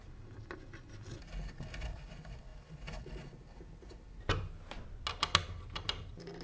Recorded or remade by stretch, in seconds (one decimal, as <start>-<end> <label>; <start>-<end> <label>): 0.0-6.4 recorded